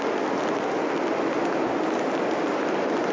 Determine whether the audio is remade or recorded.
recorded